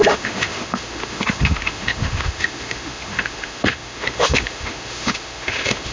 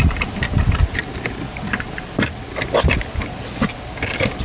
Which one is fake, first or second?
first